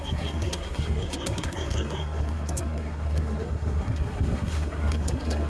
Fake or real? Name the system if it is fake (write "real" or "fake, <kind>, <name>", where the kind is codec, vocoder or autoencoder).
fake, codec, SNAC